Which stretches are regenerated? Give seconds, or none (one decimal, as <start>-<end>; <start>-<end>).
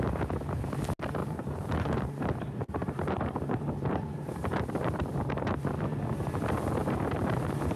1.2-5.8; 6.8-7.8